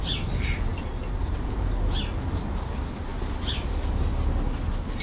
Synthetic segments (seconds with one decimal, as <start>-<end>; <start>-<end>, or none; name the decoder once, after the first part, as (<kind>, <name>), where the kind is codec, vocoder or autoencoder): none